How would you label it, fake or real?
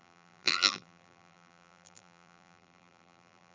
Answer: fake